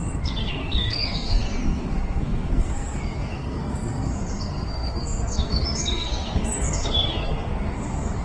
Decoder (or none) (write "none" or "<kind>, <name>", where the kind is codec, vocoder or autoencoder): codec, SNAC